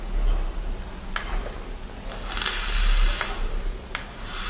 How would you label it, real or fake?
real